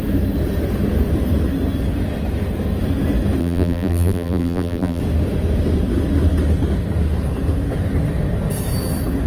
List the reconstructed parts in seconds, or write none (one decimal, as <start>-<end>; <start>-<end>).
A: 3.4-5.0